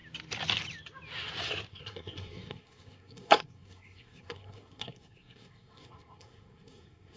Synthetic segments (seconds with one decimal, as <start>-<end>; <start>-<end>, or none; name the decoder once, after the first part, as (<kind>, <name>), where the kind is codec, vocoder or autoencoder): 1.7-7.2 (codec, SNAC)